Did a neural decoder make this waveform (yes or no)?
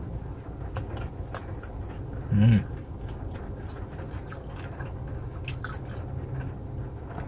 no